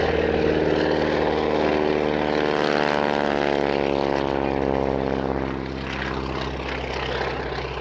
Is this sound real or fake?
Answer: real